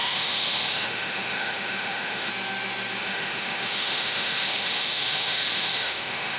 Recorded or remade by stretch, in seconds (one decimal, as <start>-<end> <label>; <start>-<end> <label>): 0.0-2.3 remade; 2.3-3.0 recorded; 3.0-6.4 remade